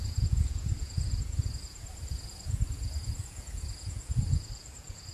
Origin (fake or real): fake